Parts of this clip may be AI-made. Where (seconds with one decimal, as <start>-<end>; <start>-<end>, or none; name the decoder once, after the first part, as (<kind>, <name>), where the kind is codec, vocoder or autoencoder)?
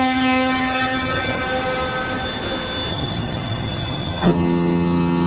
0.0-1.4 (vocoder, HiFi-GAN); 2.9-5.3